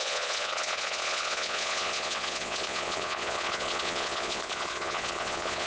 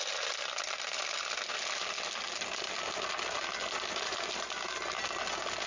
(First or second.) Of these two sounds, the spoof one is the first